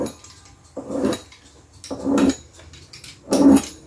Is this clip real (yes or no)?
yes